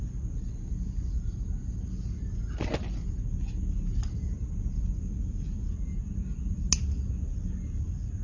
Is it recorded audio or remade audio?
recorded